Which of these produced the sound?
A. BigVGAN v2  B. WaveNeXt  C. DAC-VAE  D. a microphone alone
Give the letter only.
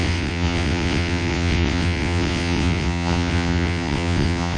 B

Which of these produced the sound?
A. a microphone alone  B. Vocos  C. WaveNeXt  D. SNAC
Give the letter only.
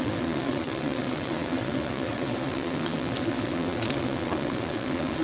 C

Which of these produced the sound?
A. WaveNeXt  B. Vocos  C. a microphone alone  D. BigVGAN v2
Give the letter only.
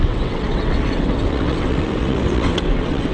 A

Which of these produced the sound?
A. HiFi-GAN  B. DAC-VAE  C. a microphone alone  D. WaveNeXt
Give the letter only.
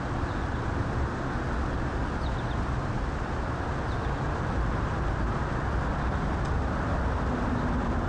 C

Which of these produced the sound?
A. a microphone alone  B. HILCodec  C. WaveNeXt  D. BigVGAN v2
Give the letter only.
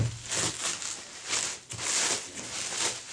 A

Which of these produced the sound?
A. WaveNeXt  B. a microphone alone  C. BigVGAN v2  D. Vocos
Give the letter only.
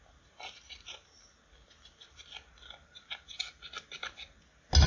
B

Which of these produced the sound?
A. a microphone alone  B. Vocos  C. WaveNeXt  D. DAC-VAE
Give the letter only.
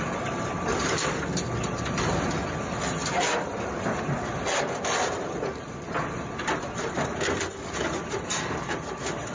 A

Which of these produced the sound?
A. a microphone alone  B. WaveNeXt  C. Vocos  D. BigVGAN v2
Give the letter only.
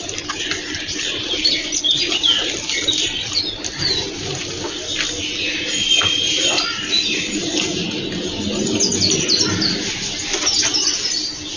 A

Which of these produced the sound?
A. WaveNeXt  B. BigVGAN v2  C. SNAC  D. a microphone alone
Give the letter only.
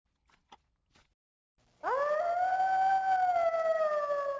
D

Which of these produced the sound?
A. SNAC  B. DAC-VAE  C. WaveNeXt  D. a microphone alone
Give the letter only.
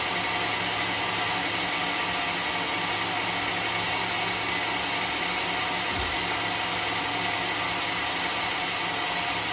D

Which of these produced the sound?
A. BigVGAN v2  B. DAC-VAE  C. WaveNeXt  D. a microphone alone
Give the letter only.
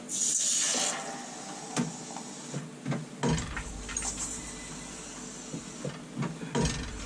D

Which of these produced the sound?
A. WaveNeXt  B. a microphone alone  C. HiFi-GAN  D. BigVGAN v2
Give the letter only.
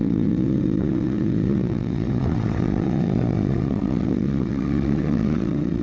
A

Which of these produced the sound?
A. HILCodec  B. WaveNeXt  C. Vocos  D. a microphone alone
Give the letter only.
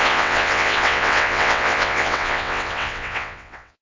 B